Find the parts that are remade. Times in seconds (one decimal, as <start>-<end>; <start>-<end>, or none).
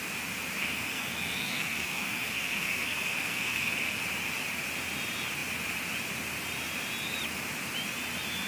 0.6-4.0